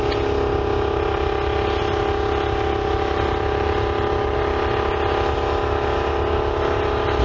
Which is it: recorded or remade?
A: recorded